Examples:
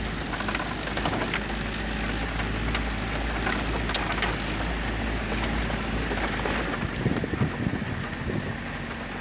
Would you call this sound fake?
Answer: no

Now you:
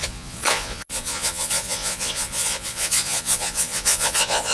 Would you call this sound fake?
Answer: yes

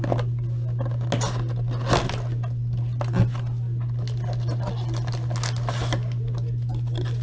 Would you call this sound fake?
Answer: no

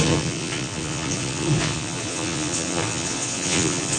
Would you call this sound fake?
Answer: yes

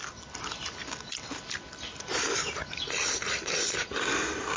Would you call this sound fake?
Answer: no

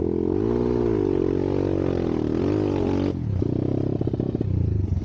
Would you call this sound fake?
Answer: no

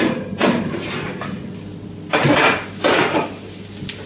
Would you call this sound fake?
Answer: no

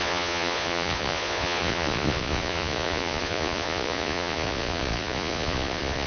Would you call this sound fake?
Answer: yes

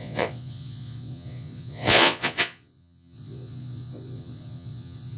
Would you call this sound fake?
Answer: yes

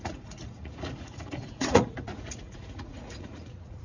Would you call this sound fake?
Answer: yes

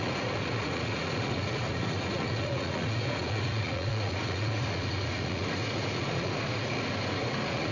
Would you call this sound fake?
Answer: yes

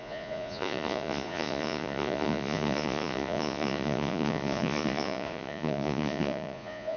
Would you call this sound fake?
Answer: yes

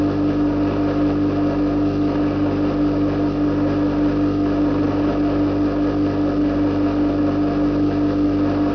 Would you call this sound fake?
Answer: no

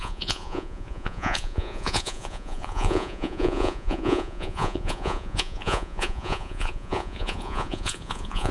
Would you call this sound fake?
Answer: yes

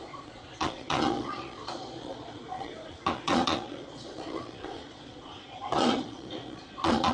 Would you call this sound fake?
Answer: yes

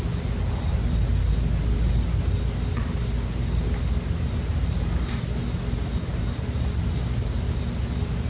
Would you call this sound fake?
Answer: no